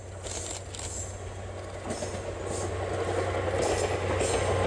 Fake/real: real